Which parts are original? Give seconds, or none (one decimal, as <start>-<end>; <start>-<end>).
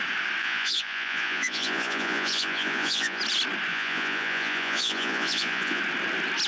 0.0-0.4; 3.2-3.7; 5.8-6.5